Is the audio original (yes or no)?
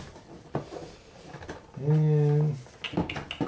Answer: yes